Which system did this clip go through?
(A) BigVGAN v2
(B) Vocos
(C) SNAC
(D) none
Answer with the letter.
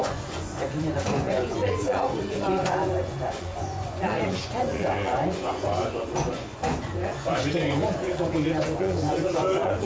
B